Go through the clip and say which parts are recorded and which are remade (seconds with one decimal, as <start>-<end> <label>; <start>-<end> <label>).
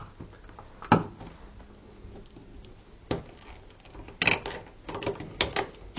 0.0-6.0 recorded